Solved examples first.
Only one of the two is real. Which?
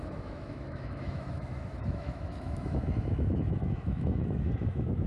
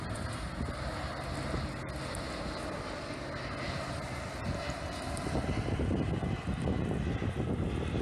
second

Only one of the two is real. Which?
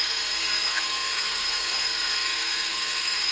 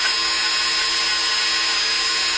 second